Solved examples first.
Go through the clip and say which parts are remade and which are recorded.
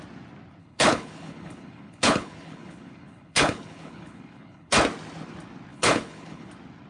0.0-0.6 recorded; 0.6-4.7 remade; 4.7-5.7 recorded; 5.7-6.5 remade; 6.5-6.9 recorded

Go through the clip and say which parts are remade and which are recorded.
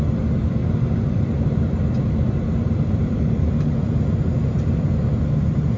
0.0-0.6 recorded; 0.6-4.1 remade; 4.1-5.8 recorded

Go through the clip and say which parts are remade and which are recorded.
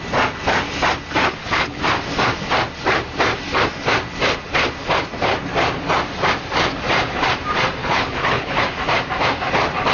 0.0-1.2 recorded; 1.2-1.8 remade; 1.8-7.8 recorded; 7.8-8.6 remade; 8.6-9.9 recorded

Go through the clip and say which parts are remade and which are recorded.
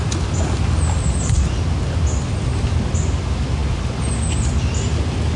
0.0-5.4 recorded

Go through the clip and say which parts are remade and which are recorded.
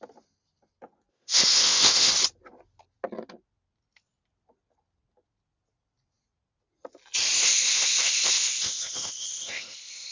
0.0-1.1 recorded; 1.1-2.1 remade; 2.1-7.4 recorded; 7.4-10.1 remade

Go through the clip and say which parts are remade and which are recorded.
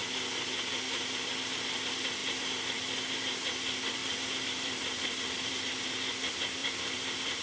0.0-4.0 recorded; 4.0-5.9 remade; 5.9-6.6 recorded; 6.6-7.4 remade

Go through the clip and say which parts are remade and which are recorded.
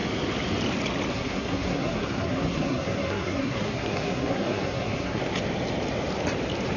0.0-1.1 recorded; 1.1-5.2 remade; 5.2-6.8 recorded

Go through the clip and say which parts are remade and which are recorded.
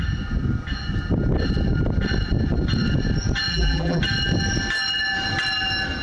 0.0-3.5 recorded; 3.5-4.0 remade; 4.0-6.0 recorded